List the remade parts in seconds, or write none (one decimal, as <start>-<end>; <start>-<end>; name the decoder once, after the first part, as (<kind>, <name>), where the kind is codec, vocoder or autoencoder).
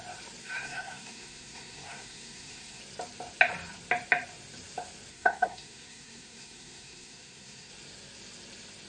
0.4-2.8 (codec, SNAC); 5.1-7.7